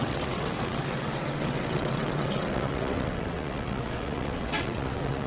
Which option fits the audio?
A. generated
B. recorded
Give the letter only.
A